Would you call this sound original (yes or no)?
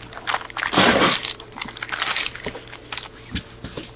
yes